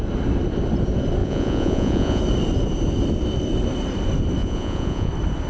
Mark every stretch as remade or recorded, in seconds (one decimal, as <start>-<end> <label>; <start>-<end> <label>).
0.0-1.2 recorded; 1.2-2.2 remade; 2.2-4.4 recorded; 4.4-5.1 remade; 5.1-5.5 recorded